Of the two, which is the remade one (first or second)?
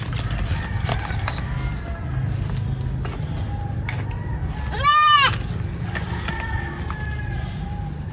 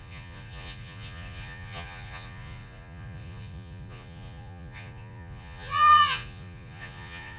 second